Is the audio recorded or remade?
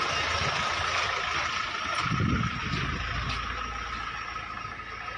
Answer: recorded